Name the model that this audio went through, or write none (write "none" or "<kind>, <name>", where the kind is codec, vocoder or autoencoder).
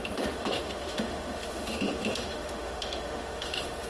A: autoencoder, DAC-VAE